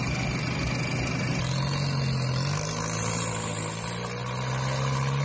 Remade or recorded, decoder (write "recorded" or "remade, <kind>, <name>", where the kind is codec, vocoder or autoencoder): recorded